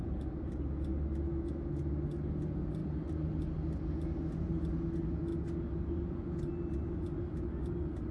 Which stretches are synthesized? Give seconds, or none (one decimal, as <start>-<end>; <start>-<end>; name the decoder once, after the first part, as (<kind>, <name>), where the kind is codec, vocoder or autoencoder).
1.3-1.8 (autoencoder, DAC-VAE)